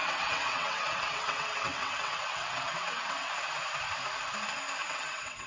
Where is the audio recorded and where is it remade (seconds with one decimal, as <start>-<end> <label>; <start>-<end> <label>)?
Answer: 0.0-3.3 remade; 3.3-4.8 recorded; 4.8-5.5 remade